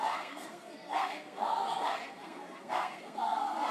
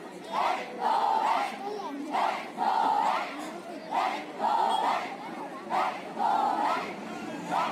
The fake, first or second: first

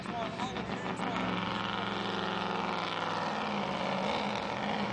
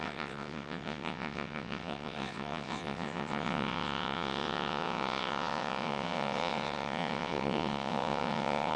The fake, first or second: second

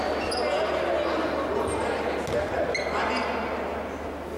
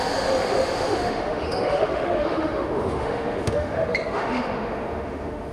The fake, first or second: second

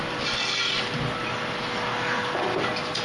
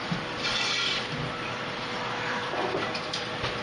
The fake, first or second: second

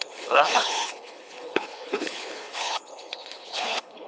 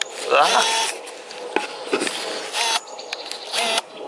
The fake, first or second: first